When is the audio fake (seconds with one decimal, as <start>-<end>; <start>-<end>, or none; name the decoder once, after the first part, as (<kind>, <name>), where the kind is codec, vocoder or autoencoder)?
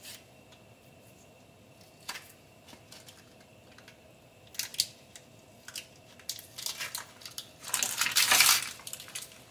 none